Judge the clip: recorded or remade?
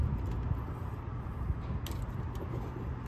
recorded